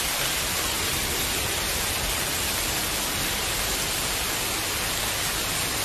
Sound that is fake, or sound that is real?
real